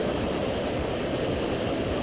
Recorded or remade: recorded